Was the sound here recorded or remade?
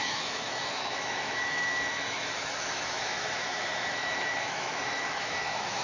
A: remade